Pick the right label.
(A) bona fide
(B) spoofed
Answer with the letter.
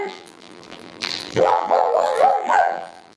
B